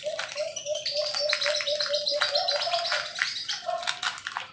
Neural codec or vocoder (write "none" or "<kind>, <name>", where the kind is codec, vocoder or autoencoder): none